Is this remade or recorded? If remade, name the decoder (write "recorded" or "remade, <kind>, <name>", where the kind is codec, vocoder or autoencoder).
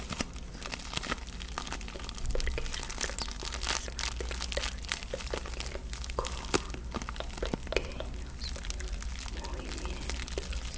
recorded